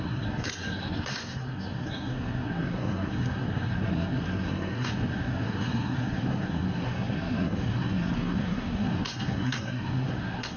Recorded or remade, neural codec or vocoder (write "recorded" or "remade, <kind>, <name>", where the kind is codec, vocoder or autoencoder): remade, codec, SNAC